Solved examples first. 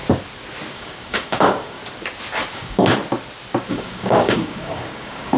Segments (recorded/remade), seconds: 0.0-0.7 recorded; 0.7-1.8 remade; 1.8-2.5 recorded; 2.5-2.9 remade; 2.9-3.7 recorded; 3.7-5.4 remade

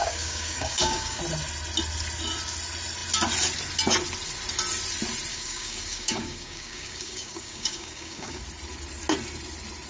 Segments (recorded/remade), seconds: 0.0-1.2 remade; 1.2-5.3 recorded; 5.3-8.4 remade; 8.4-9.9 recorded

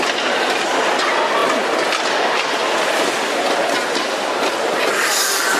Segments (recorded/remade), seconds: 0.0-5.6 recorded

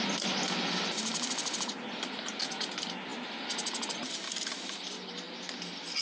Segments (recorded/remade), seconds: 0.0-6.0 recorded

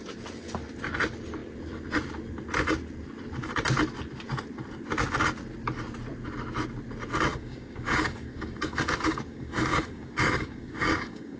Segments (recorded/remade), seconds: 0.0-7.3 recorded; 7.3-11.4 remade